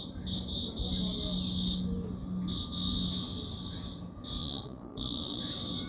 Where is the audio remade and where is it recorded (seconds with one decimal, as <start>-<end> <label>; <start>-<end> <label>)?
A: 0.0-4.4 recorded; 4.4-5.4 remade; 5.4-5.9 recorded